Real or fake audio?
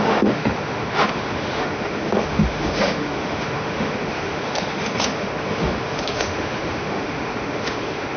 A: fake